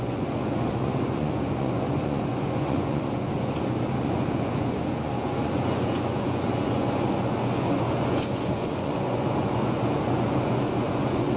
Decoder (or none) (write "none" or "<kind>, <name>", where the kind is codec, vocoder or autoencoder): vocoder, Vocos